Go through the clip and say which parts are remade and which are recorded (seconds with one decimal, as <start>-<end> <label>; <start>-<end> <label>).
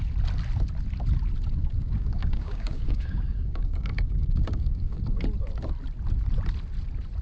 0.0-1.6 recorded; 1.6-5.2 remade; 5.2-7.2 recorded